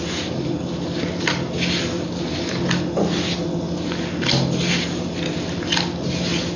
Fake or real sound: real